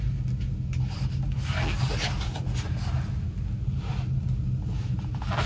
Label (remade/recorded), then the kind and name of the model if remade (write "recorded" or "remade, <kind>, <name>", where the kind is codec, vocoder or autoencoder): recorded